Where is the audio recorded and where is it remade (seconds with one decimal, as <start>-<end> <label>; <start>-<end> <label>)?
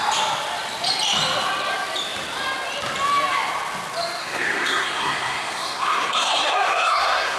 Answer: 0.0-4.2 recorded; 4.2-7.4 remade